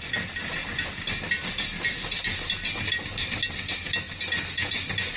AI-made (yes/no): no